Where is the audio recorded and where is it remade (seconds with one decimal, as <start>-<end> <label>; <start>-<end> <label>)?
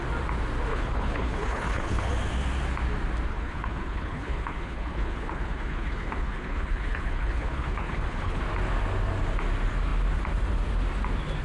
0.0-0.7 recorded; 0.7-2.1 remade; 2.1-3.3 recorded; 3.3-8.4 remade; 8.4-11.4 recorded